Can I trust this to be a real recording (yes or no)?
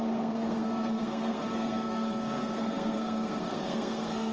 no